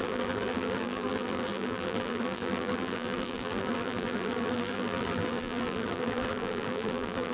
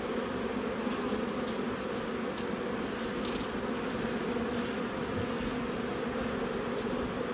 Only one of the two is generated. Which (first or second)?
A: first